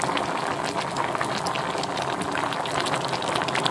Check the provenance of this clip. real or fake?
real